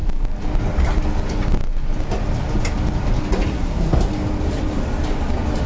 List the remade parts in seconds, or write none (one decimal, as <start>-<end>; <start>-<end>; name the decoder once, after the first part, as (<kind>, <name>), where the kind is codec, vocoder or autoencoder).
3.5-4.0 (codec, SNAC)